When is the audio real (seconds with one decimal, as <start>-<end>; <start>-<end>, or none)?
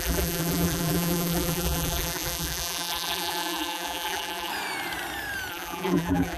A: 4.5-5.5